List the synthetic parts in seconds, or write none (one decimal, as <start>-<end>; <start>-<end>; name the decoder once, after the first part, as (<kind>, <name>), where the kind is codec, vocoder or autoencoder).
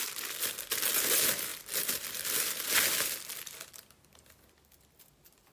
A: none